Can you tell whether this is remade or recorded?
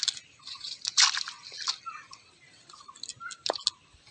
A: recorded